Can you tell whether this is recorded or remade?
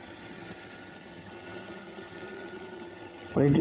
remade